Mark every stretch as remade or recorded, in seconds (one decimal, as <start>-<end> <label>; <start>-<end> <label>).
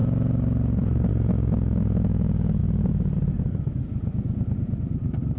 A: 0.0-1.1 remade; 1.1-2.6 recorded; 2.6-3.8 remade; 3.8-5.4 recorded